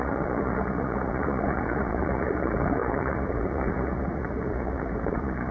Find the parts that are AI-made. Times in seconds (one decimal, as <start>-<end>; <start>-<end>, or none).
0.0-5.5